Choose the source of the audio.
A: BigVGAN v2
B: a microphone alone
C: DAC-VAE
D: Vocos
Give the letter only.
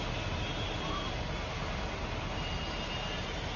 B